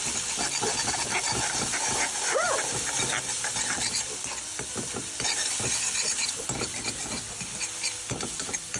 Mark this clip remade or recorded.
recorded